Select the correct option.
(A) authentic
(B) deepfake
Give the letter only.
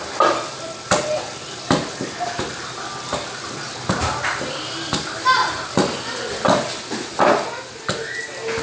A